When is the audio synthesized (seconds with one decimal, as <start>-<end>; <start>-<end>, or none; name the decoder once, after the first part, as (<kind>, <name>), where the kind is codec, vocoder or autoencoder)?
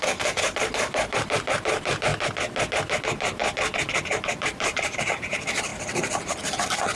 0.0-2.1 (vocoder, BigVGAN v2); 3.0-3.4; 4.0-6.9